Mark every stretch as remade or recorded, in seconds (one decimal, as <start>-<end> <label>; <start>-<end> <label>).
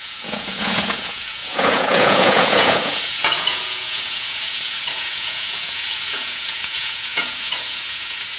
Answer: 0.0-8.4 remade